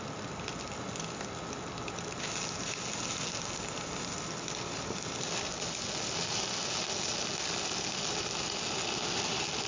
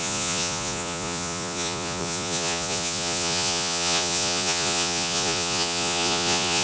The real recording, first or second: first